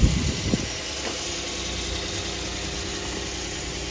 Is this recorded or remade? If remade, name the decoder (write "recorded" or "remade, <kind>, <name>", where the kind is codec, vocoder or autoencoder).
recorded